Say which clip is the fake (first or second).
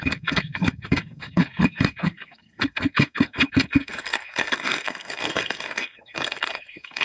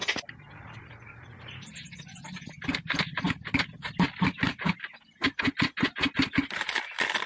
first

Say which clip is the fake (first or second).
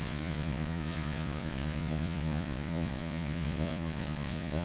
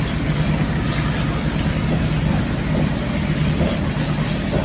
first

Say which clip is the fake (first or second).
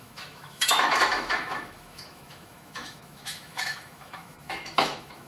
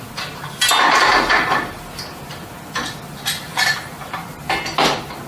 first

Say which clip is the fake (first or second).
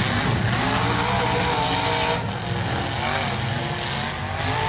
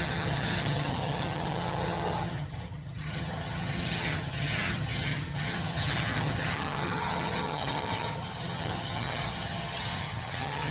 second